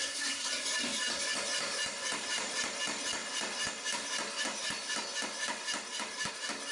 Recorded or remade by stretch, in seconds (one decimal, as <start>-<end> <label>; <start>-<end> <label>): 0.0-0.5 remade; 0.5-6.7 recorded

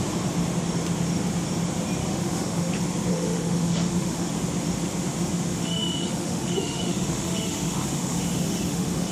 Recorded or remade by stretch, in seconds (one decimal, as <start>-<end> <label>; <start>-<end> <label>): 0.0-2.0 recorded; 2.0-2.7 remade; 2.7-3.1 recorded; 3.1-4.3 remade; 4.3-5.5 recorded; 5.5-9.1 remade

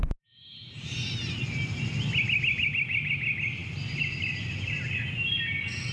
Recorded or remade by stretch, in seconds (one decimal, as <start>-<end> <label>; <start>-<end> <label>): 0.0-5.9 recorded

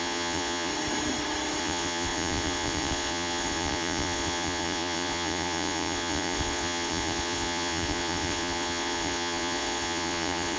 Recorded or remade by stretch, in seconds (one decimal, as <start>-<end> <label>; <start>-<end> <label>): 0.0-0.7 remade; 0.7-1.6 recorded; 1.6-10.6 remade

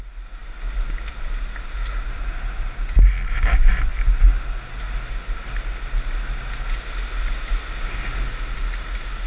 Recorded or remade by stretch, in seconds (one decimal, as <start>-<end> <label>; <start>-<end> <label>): 0.0-9.3 recorded